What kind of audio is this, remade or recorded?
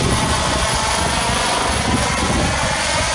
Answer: remade